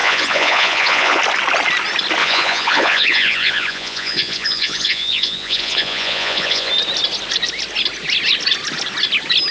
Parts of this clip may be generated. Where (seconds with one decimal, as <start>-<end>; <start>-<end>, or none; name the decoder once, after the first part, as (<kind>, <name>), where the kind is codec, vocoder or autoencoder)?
0.0-1.2 (vocoder, Vocos); 2.2-6.7